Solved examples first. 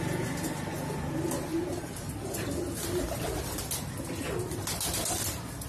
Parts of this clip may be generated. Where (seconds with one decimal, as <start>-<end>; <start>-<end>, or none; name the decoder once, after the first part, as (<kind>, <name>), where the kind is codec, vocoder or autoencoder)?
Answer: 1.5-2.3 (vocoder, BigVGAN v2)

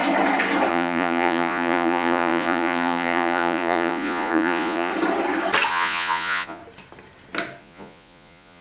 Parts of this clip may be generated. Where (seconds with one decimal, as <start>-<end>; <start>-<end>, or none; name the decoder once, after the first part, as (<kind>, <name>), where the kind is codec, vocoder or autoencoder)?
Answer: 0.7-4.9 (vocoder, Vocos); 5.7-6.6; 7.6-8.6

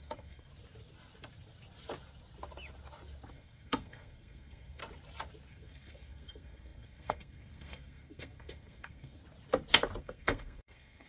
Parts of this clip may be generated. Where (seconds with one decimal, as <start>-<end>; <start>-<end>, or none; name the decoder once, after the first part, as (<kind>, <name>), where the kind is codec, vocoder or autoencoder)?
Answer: 0.0-0.5 (codec, SNAC); 3.3-4.8; 5.5-9.2; 10.0-11.1

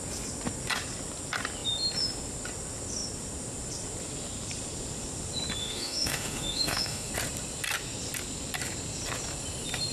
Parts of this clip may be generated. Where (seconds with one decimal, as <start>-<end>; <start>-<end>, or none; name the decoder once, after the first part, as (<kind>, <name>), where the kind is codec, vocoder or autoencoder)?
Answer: 5.6-7.1 (autoencoder, DAC-VAE)

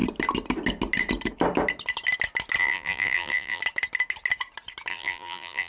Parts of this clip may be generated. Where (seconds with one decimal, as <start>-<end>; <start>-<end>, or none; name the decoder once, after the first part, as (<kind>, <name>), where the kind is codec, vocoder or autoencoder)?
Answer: 2.6-3.6 (vocoder, BigVGAN v2); 4.9-5.7

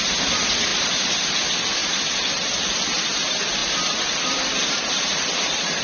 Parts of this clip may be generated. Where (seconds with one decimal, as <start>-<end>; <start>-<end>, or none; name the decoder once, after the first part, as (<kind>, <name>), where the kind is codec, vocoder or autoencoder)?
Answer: 0.7-1.3 (vocoder, BigVGAN v2); 1.8-2.6; 3.6-5.8